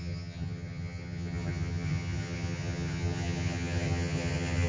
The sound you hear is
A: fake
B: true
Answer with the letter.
A